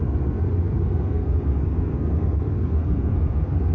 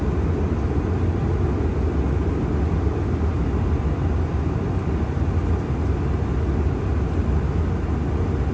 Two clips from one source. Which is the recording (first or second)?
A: second